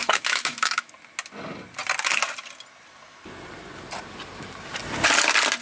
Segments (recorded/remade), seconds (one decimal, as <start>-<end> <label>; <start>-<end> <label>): 0.0-0.9 remade; 0.9-5.6 recorded